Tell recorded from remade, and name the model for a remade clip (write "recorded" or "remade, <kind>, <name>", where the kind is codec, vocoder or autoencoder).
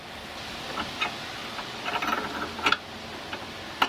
recorded